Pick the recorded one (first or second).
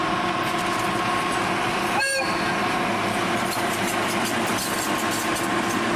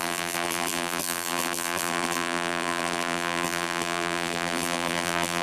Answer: first